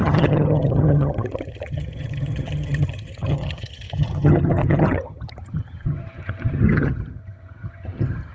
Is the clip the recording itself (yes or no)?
no